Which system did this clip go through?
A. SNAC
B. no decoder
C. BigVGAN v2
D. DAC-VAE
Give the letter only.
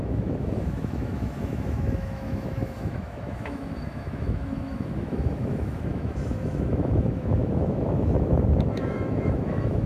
D